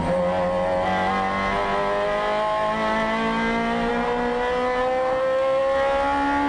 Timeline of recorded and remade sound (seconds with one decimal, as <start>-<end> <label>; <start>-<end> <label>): 0.0-6.5 recorded